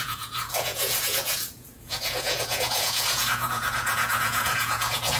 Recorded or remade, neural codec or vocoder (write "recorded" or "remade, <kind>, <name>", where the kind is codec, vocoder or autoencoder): remade, vocoder, Vocos